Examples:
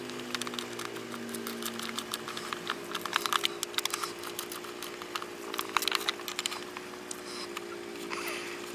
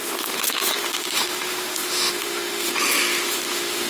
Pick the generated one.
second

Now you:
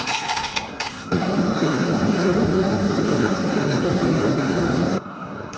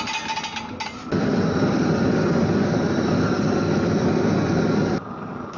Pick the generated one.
first